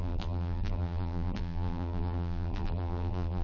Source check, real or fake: fake